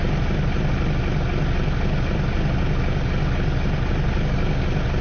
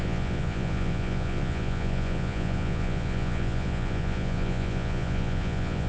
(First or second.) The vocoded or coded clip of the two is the second